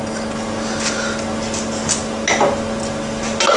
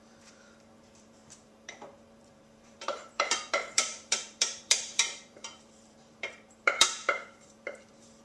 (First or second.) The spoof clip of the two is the second